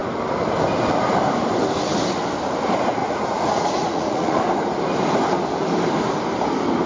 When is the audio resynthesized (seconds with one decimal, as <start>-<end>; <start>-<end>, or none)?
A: 3.0-4.4